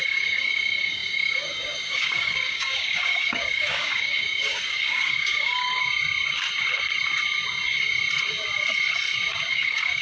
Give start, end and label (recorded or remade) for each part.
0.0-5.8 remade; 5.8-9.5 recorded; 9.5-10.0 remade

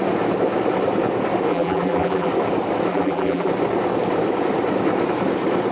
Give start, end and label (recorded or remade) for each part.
0.0-1.5 recorded; 1.5-2.3 remade; 2.3-2.9 recorded; 2.9-3.5 remade; 3.5-5.7 recorded

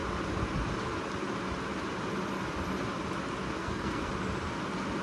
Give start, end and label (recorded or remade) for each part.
0.0-3.6 recorded; 3.6-4.1 remade; 4.1-5.0 recorded

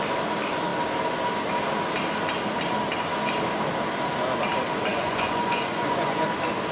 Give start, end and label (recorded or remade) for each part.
0.0-4.9 recorded; 4.9-6.2 remade; 6.2-6.7 recorded

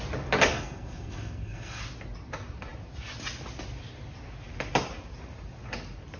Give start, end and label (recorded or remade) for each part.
0.0-0.5 recorded; 0.5-1.8 remade; 1.8-6.2 recorded

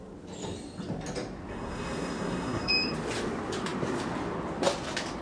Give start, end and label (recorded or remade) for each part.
0.0-1.5 recorded; 1.5-2.7 remade; 2.7-5.2 recorded

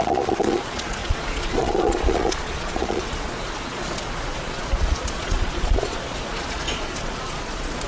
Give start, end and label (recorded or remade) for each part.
0.0-7.9 remade